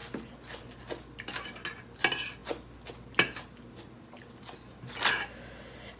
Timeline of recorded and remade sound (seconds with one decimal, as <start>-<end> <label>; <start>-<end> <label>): 0.0-6.0 recorded